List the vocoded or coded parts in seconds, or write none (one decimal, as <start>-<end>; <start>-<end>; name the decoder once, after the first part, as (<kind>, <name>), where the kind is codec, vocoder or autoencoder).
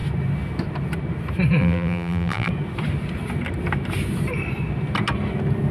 1.6-2.5 (vocoder, BigVGAN v2)